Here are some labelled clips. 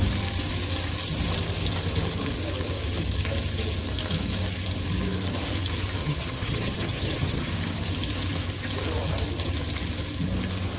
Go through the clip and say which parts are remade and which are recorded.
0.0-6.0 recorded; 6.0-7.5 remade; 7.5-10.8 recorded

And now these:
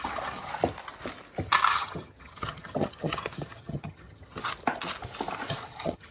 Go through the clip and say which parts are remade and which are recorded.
0.0-0.5 remade; 0.5-1.7 recorded; 1.7-4.5 remade; 4.5-5.5 recorded; 5.5-6.1 remade

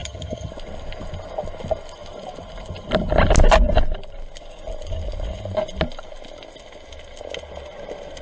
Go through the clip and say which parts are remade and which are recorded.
0.0-0.5 remade; 0.5-8.2 recorded

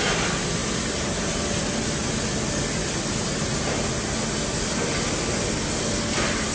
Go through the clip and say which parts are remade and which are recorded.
0.0-6.5 recorded

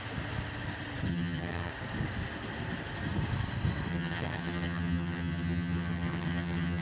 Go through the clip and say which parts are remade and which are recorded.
0.0-1.1 recorded; 1.1-1.7 remade; 1.7-3.9 recorded; 3.9-6.8 remade

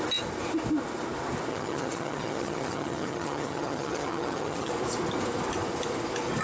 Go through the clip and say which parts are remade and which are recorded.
0.0-1.5 recorded; 1.5-4.7 remade; 4.7-6.4 recorded